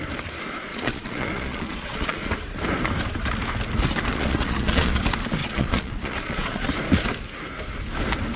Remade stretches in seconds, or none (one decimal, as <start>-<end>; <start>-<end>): 0.7-2.3; 4.1-5.0; 5.4-6.7